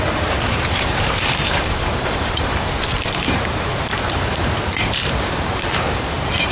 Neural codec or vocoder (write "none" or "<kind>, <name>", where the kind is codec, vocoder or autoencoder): vocoder, BigVGAN v2